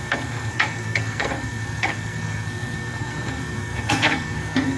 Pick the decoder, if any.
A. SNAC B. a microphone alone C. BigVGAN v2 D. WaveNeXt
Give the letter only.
A